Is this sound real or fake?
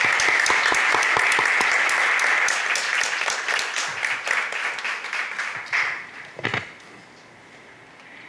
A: real